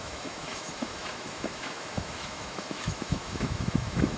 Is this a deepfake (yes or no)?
yes